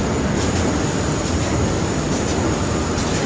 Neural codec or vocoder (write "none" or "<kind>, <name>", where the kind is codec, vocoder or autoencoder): none